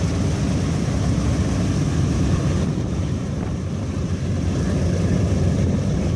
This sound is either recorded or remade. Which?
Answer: remade